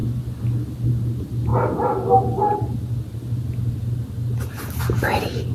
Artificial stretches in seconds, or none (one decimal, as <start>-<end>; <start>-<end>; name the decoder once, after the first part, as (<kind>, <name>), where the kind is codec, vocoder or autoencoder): none